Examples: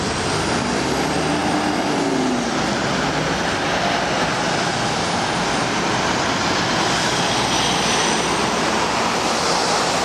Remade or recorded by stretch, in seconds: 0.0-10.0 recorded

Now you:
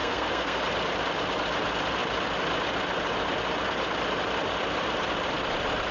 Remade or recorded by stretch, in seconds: 0.0-0.6 remade; 0.6-5.9 recorded

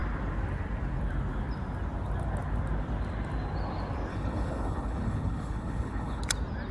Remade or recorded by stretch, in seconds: 0.0-4.1 recorded; 4.1-6.2 remade; 6.2-6.7 recorded

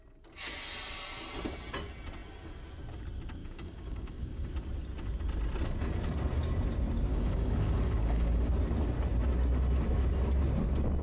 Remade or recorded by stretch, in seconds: 0.0-3.4 recorded; 3.4-4.5 remade; 4.5-7.1 recorded; 7.1-8.5 remade; 8.5-11.0 recorded

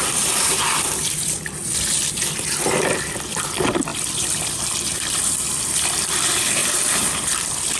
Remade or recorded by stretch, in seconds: 0.0-7.8 remade

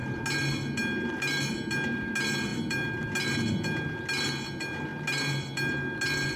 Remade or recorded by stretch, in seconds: 0.0-6.4 recorded